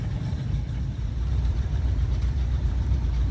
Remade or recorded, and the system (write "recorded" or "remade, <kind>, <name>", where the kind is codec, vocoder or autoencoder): remade, vocoder, BigVGAN v2